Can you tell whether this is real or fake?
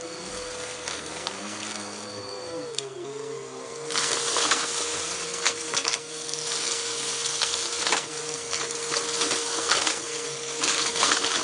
fake